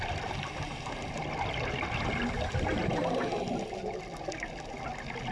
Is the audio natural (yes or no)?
yes